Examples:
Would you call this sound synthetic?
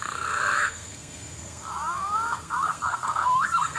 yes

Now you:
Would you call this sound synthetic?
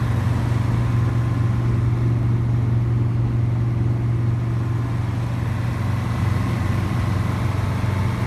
no